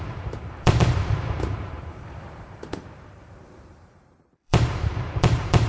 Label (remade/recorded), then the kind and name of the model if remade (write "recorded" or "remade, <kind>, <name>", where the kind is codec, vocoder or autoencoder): remade, vocoder, BigVGAN v2